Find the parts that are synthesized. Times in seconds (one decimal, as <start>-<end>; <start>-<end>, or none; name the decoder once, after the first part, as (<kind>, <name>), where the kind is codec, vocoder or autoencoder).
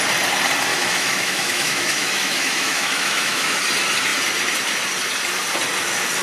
0.7-3.6 (autoencoder, DAC-VAE)